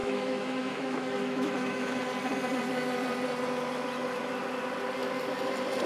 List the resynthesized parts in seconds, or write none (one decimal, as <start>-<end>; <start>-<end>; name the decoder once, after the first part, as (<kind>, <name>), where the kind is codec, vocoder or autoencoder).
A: 0.0-2.0 (autoencoder, DAC-VAE)